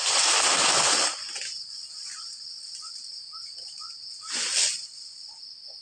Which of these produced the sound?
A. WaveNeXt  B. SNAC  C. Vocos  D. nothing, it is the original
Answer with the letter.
D